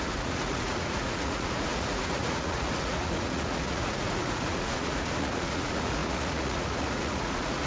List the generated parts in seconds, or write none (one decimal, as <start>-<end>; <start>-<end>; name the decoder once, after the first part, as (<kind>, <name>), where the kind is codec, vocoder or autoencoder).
0.0-7.7 (vocoder, Vocos)